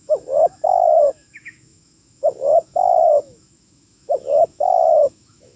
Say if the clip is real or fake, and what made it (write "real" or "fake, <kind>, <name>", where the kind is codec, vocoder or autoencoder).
fake, autoencoder, DAC-VAE